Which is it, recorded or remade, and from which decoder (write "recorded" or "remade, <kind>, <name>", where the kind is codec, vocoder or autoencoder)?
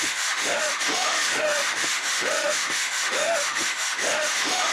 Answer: remade, autoencoder, DAC-VAE